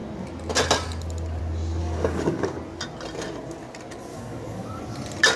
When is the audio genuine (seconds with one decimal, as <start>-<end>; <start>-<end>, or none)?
0.0-1.8; 2.6-4.1; 4.8-5.4